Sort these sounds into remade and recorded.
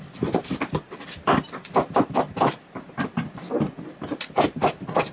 remade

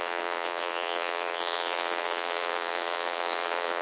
remade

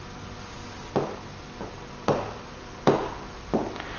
recorded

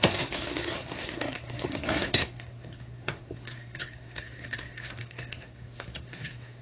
remade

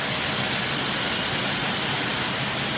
recorded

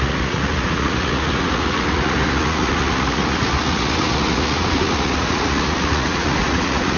remade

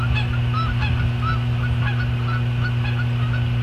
recorded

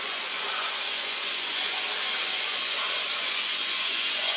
remade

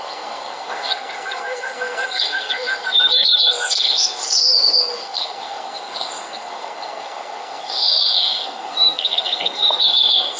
remade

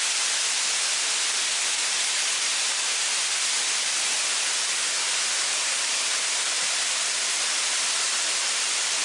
recorded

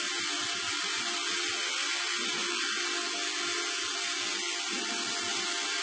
recorded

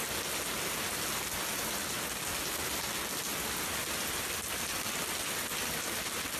recorded